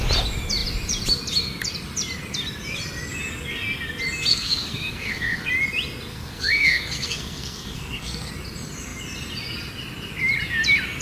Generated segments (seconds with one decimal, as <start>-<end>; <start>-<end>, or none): 4.3-5.5; 6.1-8.3